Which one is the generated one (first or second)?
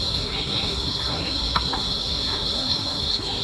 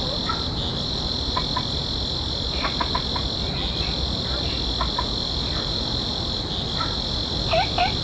first